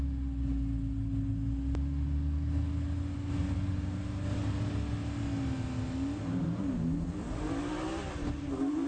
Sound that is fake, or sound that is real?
real